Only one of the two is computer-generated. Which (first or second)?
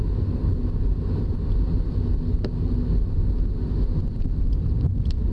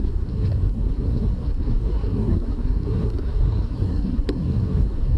second